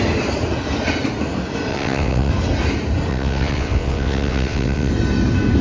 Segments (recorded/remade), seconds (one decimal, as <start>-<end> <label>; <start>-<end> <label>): 0.0-1.7 recorded; 1.7-2.3 remade; 2.3-3.1 recorded; 3.1-4.9 remade; 4.9-5.6 recorded